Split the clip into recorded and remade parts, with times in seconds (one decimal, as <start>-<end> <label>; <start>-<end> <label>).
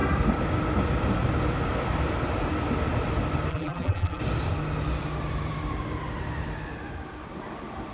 0.0-3.5 recorded; 3.5-4.2 remade; 4.2-7.9 recorded